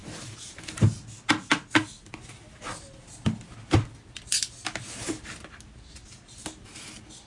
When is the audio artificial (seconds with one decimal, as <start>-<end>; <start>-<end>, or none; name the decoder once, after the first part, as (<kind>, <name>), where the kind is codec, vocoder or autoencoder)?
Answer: none